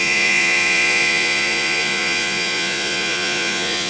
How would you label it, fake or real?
fake